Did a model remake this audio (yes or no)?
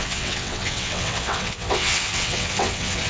yes